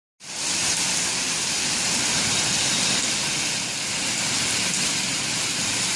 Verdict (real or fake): real